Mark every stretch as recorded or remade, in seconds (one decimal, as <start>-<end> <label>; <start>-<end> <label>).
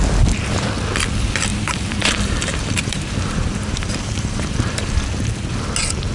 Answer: 0.0-1.5 recorded; 1.5-4.9 remade; 4.9-6.1 recorded